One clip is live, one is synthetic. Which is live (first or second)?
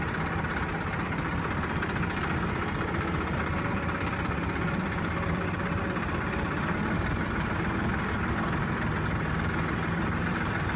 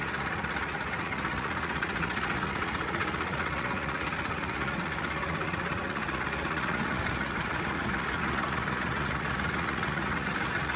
first